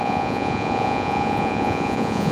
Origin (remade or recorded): remade